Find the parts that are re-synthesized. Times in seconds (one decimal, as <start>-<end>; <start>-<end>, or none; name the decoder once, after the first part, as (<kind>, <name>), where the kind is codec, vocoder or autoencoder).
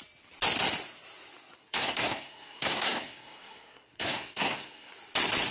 1.6-4.9 (codec, SNAC)